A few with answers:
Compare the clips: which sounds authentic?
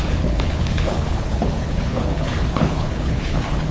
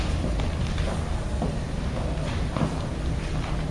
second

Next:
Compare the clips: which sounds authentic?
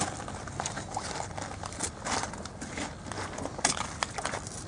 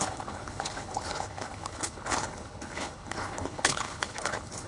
first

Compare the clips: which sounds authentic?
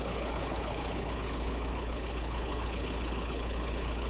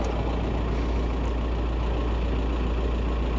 second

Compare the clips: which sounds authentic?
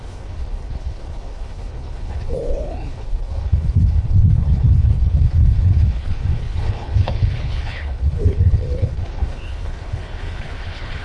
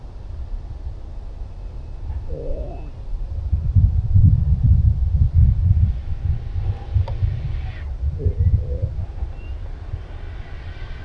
second